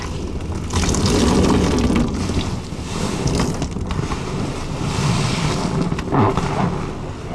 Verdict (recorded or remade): recorded